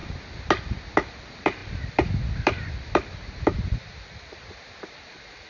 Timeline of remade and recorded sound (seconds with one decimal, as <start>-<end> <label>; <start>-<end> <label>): 0.0-5.5 recorded